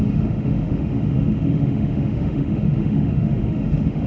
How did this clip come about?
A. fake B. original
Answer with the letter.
A